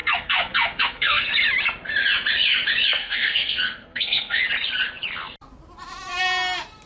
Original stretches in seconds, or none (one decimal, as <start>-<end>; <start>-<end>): 1.2-3.0; 4.4-6.9